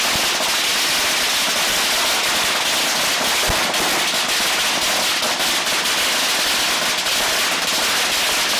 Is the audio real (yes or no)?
yes